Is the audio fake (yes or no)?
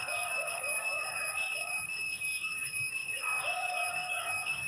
yes